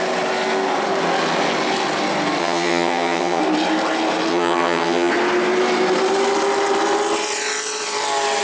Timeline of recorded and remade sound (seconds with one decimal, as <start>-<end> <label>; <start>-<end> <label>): 0.0-2.4 recorded; 2.4-3.4 remade; 3.4-4.3 recorded; 4.3-5.1 remade; 5.1-8.4 recorded